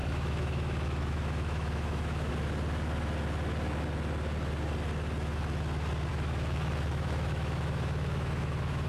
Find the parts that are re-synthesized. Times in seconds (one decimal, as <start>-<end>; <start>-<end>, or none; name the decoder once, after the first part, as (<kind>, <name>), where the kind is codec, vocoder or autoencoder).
0.0-2.3 (autoencoder, DAC-VAE); 6.1-8.9